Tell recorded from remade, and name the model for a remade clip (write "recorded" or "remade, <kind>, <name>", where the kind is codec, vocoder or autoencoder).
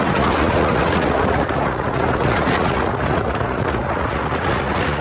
remade, vocoder, Vocos